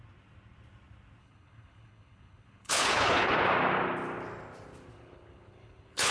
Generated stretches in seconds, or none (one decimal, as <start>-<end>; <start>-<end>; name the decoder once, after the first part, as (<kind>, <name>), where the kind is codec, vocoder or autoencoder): 1.2-3.3 (codec, HILCodec); 4.9-6.1